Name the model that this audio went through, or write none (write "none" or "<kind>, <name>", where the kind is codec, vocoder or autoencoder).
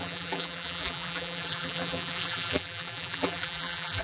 vocoder, BigVGAN v2